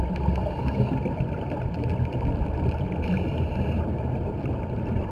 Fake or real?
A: real